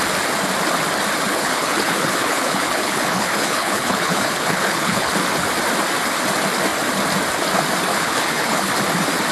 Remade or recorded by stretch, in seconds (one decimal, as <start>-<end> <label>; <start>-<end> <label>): 0.0-1.3 recorded; 1.3-5.1 remade; 5.1-7.9 recorded; 7.9-8.7 remade; 8.7-9.3 recorded